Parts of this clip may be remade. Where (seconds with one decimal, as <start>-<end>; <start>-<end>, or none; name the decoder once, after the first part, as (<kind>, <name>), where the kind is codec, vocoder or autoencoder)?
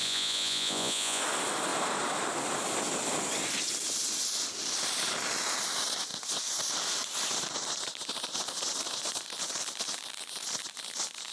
0.0-1.2 (vocoder, Vocos)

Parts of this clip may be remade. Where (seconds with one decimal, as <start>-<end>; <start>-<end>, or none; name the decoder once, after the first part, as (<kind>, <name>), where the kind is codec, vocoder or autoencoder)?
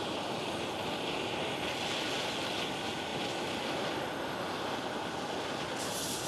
none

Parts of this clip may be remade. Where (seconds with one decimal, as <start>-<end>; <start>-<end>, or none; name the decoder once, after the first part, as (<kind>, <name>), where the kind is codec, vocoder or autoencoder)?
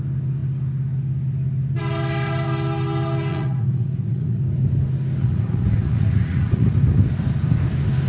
3.3-4.4 (vocoder, Vocos); 5.2-6.7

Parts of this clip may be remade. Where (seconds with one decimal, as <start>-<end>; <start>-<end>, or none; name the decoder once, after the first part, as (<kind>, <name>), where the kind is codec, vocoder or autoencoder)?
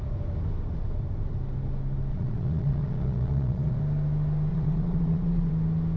2.1-3.8 (vocoder, Vocos); 4.5-5.5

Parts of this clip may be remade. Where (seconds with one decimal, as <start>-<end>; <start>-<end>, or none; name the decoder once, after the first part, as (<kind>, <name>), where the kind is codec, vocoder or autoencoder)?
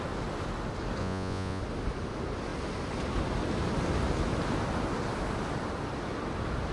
1.0-1.6 (vocoder, Vocos)